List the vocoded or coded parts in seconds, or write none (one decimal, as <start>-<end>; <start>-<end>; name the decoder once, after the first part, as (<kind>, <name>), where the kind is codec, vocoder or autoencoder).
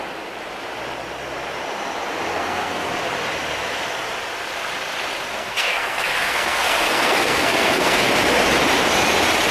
2.3-2.9 (codec, SNAC); 5.3-8.1